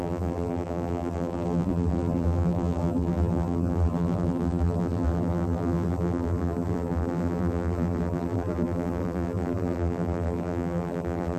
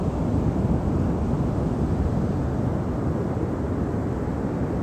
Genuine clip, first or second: second